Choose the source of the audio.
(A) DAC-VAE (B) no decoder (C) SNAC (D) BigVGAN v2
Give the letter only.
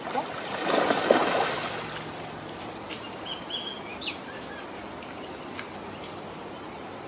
B